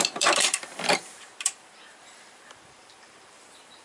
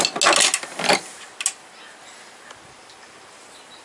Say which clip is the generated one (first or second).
first